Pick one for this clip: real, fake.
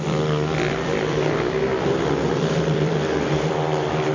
fake